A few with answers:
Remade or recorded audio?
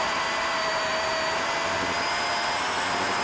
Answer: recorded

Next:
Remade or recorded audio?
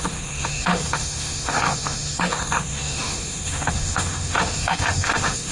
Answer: remade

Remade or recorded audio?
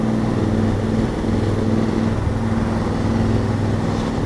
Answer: recorded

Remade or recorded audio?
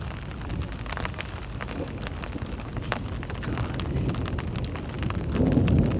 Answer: recorded